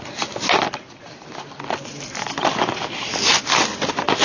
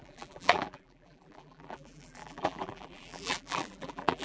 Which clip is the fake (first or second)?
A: second